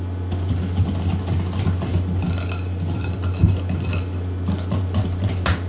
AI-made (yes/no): no